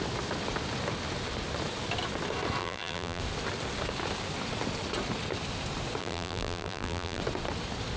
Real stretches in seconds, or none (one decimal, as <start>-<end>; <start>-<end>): 0.0-2.6; 3.2-6.0; 7.2-8.0